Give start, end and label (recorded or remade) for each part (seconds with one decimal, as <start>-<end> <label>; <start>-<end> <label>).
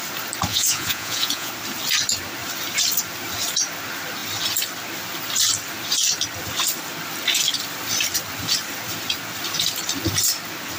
0.0-0.5 recorded; 0.5-1.5 remade; 1.5-10.8 recorded